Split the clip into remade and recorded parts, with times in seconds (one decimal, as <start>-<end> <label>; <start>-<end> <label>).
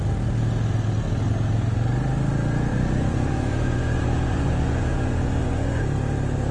0.0-2.7 recorded; 2.7-5.8 remade; 5.8-6.5 recorded